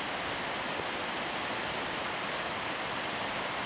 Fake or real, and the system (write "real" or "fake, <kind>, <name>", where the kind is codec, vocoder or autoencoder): real